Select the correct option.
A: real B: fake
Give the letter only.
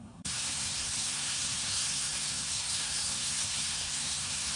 B